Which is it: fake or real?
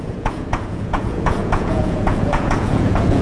fake